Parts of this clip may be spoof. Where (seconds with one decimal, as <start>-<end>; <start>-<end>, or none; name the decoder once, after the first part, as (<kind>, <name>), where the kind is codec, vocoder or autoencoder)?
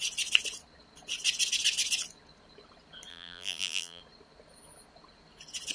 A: 3.1-4.0 (vocoder, BigVGAN v2)